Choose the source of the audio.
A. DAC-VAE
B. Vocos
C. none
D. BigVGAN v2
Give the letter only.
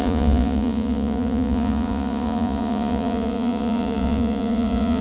B